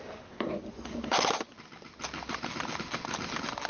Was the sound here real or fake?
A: real